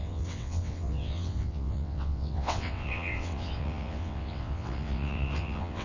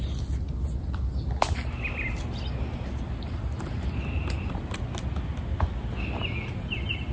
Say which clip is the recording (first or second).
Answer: second